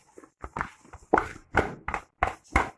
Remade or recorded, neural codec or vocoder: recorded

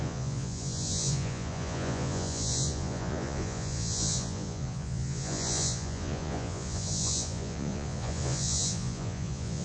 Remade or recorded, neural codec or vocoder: remade, vocoder, Vocos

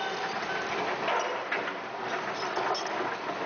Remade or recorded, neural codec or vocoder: recorded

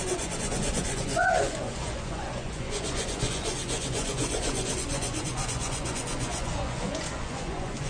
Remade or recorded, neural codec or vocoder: remade, vocoder, Vocos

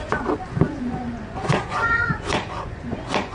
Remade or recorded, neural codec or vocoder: remade, vocoder, Vocos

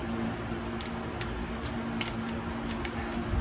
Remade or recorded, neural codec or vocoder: recorded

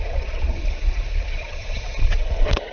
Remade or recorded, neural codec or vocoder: remade, vocoder, Vocos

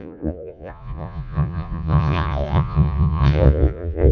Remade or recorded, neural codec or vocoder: remade, vocoder, Vocos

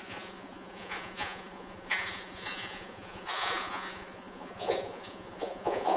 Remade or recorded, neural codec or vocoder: remade, vocoder, Vocos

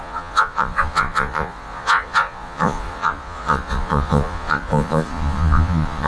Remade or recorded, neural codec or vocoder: remade, vocoder, Vocos